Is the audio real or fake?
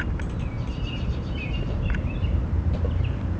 fake